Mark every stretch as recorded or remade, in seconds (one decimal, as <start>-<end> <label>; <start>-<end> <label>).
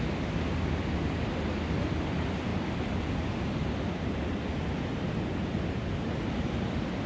0.0-7.1 recorded